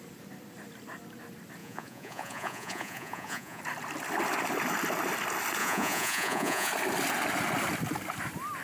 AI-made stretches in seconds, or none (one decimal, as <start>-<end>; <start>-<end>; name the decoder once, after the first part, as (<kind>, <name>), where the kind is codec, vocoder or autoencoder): 1.6-3.6 (vocoder, Vocos); 5.6-6.7